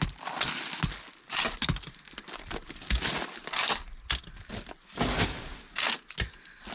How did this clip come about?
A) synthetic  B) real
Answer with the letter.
B